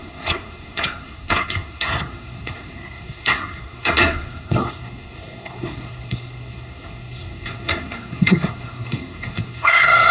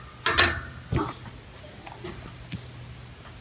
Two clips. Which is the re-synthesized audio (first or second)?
first